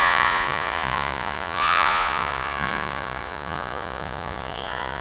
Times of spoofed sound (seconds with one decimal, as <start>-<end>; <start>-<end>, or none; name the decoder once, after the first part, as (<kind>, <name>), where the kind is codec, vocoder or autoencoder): 0.0-5.0 (vocoder, Vocos)